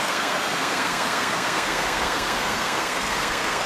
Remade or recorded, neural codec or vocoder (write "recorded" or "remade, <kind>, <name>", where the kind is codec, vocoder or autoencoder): remade, codec, SNAC